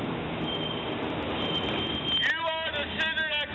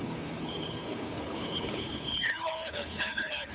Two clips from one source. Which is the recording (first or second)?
first